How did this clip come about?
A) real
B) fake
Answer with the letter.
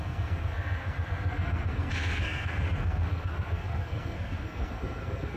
B